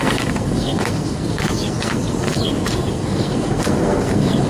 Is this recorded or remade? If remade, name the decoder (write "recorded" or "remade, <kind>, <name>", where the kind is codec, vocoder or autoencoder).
remade, codec, SNAC